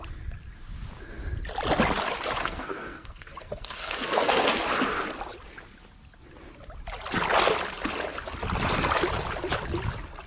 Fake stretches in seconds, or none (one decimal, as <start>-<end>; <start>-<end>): 2.4-4.5

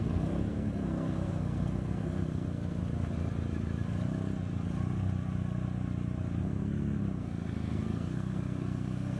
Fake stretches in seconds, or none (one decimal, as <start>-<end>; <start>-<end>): 0.0-2.8; 6.4-9.2

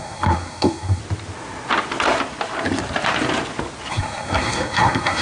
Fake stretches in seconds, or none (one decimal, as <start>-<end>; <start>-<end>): 0.0-1.0; 3.9-5.2

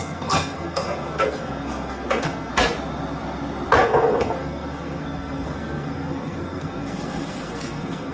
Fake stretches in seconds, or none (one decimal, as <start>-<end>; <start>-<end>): 0.0-2.5; 3.8-8.1

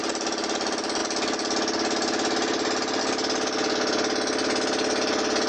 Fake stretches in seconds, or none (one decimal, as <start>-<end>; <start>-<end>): none

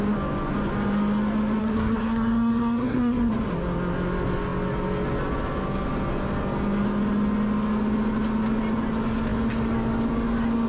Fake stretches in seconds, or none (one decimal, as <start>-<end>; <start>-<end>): 1.6-3.3

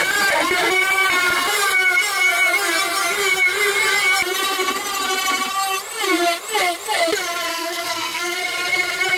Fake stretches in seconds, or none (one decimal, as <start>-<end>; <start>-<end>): 7.5-8.4

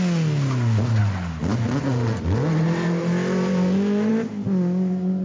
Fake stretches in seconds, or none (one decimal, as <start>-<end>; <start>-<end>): none